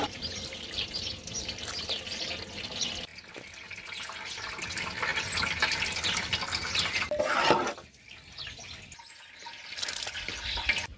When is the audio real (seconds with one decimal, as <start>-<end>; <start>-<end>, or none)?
0.0-11.0